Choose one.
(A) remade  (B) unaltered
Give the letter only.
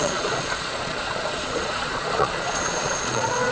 A